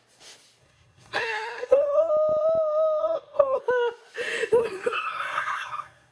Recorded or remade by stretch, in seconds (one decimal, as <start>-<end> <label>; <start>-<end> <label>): 0.0-0.6 recorded; 0.6-2.1 remade; 2.1-3.0 recorded; 3.0-3.6 remade; 3.6-4.6 recorded; 4.6-6.1 remade